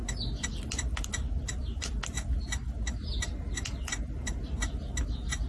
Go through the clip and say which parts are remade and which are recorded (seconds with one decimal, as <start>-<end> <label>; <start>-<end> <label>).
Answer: 0.0-5.5 recorded